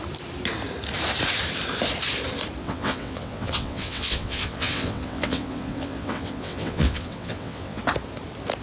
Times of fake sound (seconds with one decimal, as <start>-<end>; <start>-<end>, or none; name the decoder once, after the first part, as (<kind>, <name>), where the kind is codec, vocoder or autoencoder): 2.6-7.8 (vocoder, WaveNeXt)